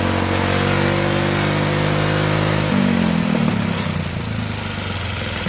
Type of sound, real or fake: real